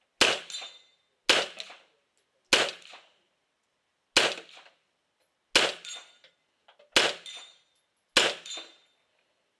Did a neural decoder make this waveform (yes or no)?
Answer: no